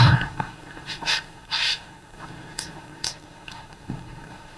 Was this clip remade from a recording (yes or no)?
yes